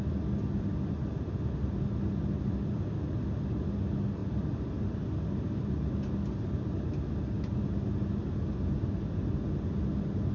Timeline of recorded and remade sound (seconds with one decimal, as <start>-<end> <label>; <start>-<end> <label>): 0.0-10.3 recorded